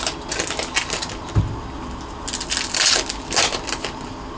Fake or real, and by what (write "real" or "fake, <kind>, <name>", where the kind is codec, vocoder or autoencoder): real